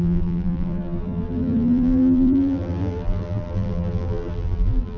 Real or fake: fake